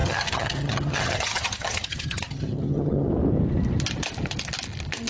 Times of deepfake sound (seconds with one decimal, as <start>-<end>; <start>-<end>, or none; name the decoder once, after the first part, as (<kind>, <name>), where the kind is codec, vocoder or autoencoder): 0.0-3.1 (vocoder, HiFi-GAN)